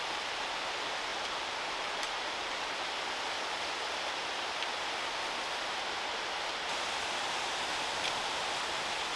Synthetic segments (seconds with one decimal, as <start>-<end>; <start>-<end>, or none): none